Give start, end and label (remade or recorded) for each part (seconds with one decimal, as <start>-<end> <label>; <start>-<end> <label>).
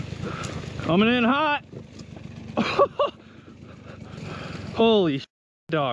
0.0-5.9 recorded